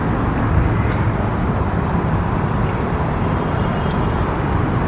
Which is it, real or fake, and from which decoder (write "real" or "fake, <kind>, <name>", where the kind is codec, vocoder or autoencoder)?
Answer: real